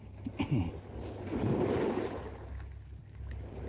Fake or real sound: real